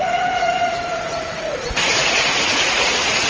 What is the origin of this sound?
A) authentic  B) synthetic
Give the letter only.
B